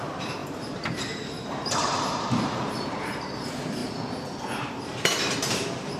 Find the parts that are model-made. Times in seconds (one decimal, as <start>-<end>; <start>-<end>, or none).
0.0-3.8; 4.6-6.0